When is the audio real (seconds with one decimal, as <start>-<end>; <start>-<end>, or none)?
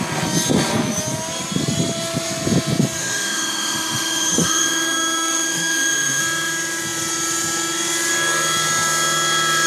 0.0-3.0; 6.2-9.7